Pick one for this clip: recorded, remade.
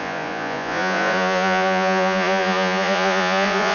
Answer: remade